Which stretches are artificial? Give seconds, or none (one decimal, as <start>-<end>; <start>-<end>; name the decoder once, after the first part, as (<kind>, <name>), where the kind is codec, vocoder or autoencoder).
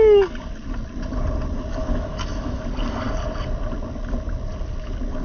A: 1.8-2.6 (autoencoder, DAC-VAE)